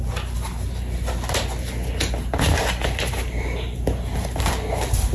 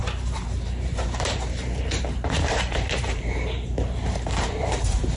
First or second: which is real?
first